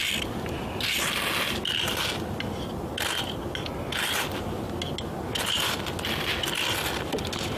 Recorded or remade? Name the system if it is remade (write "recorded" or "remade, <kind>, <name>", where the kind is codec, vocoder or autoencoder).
recorded